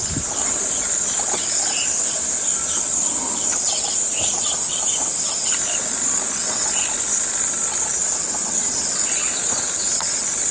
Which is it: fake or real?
fake